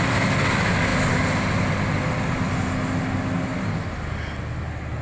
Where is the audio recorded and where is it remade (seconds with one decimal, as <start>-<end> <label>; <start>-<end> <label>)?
0.0-5.0 recorded